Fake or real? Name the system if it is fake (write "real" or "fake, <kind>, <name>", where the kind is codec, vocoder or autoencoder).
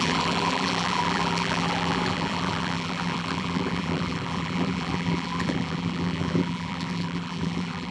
fake, vocoder, BigVGAN v2